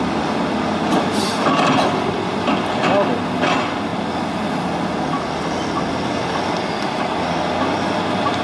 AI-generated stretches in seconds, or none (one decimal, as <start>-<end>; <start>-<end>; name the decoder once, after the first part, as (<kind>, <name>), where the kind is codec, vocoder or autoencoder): none